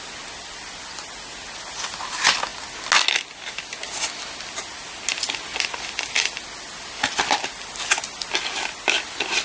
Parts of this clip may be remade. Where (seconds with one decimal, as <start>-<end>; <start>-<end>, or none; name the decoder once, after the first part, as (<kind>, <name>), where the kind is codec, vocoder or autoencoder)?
none